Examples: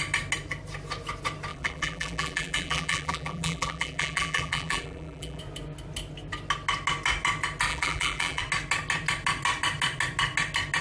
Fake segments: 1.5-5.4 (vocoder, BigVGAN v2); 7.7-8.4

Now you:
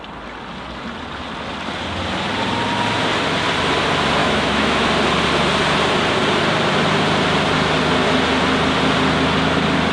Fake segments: 4.2-4.9 (autoencoder, DAC-VAE)

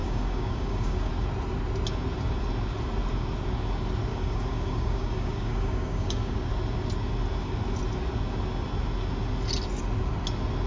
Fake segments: 0.0-1.1 (codec, DAC); 4.1-6.5